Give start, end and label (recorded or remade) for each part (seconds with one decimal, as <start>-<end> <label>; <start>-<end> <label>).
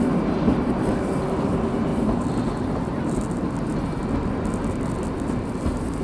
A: 0.0-6.0 recorded